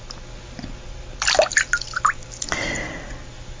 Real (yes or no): yes